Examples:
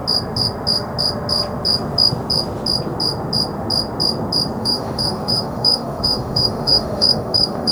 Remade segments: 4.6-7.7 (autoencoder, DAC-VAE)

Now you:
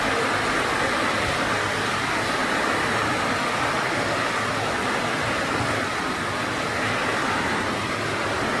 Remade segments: none

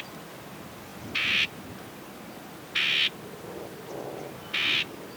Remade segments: none